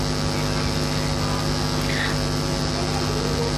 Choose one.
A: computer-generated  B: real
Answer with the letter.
B